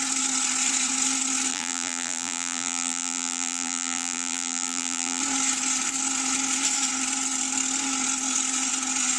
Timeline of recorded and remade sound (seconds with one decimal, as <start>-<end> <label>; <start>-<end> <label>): 0.0-1.5 recorded; 1.5-5.2 remade; 5.2-9.2 recorded